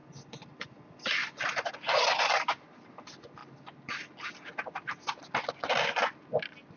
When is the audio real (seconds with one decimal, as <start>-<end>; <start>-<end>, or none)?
0.0-6.8

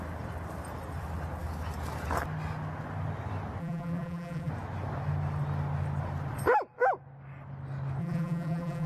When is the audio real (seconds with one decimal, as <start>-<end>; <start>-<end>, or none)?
0.0-3.6; 4.5-8.0

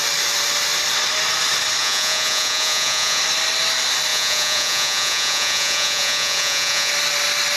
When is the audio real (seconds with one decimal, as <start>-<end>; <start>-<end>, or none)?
0.0-1.8; 3.2-4.1; 6.9-7.6

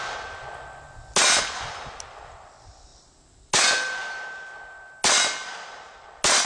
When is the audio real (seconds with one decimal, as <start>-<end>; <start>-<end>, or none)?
0.0-6.4

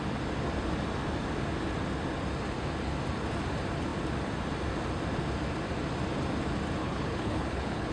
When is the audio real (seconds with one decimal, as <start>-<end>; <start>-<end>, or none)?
0.0-6.8